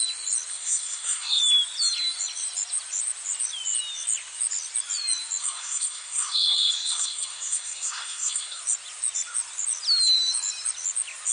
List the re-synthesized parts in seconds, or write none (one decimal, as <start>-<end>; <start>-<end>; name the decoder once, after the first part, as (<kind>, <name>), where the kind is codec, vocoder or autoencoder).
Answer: 0.5-1.4 (codec, SNAC); 5.4-8.6